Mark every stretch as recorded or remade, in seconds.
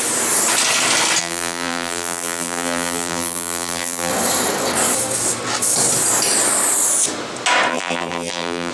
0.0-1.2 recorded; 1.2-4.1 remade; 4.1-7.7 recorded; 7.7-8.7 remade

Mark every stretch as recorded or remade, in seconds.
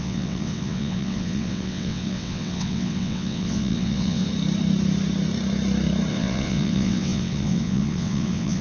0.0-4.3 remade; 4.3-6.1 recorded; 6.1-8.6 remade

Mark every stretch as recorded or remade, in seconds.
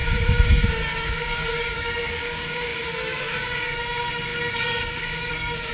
0.0-5.7 remade